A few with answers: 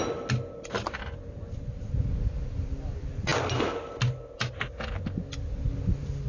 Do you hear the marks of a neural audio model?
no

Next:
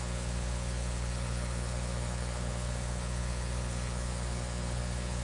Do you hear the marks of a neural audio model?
yes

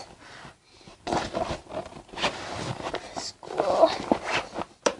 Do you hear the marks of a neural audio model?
no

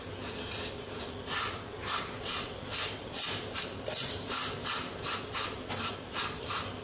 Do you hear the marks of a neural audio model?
no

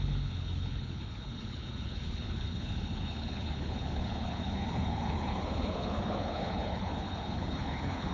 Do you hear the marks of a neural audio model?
yes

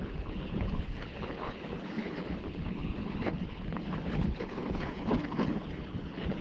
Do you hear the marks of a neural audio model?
yes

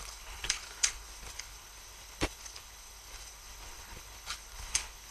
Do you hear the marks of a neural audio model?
yes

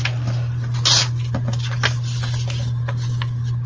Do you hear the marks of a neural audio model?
no